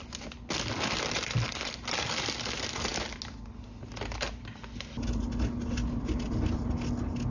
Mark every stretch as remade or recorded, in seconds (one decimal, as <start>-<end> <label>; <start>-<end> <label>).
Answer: 0.0-7.3 recorded